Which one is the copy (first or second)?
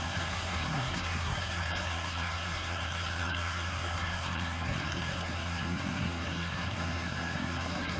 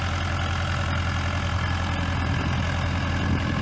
first